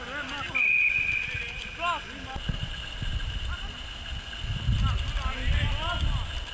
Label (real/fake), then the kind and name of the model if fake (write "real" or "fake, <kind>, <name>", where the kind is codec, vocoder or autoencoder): real